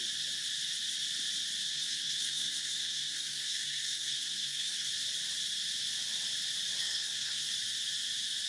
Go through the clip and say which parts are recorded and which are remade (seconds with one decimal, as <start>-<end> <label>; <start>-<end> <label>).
0.0-1.6 recorded; 1.6-4.9 remade; 4.9-6.8 recorded; 6.8-7.5 remade; 7.5-8.5 recorded